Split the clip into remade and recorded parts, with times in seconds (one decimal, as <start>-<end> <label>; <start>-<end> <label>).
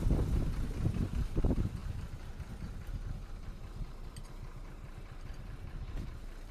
0.0-6.5 remade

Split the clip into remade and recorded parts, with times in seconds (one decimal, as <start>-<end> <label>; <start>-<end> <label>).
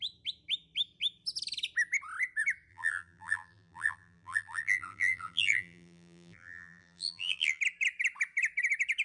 0.0-2.7 recorded; 2.7-7.6 remade; 7.6-9.0 recorded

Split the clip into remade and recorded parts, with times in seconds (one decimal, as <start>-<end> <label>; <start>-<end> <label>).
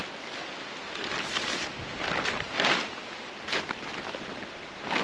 0.0-5.0 recorded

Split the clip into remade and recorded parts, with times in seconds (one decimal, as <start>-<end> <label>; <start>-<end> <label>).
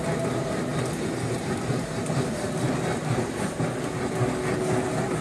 0.0-0.7 recorded; 0.7-2.4 remade; 2.4-5.2 recorded